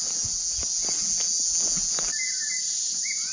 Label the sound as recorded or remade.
recorded